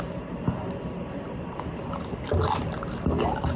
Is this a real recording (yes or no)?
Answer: yes